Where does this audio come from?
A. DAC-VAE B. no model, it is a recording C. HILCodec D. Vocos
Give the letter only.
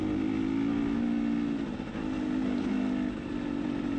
B